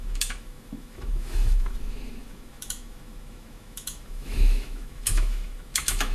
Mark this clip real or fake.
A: fake